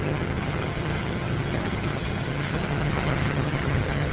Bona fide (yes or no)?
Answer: no